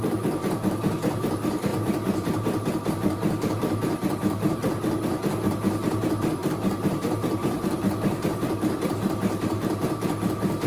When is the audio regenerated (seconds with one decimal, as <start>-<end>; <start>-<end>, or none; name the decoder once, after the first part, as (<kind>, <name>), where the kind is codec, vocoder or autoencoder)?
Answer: 0.0-4.6 (vocoder, BigVGAN v2); 6.0-10.7